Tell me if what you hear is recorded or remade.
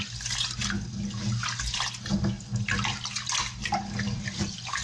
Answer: recorded